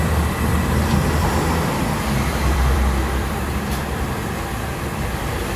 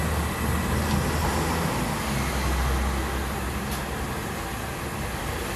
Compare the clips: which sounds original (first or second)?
second